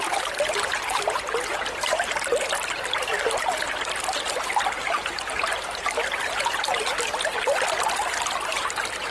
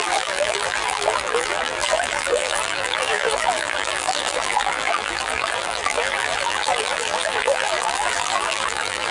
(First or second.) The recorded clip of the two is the first